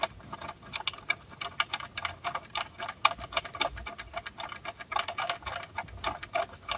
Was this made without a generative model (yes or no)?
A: yes